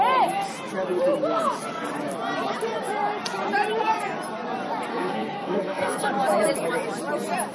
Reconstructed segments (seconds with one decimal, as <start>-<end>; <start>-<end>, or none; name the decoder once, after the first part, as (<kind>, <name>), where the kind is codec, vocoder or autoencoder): 4.9-6.1 (codec, SNAC)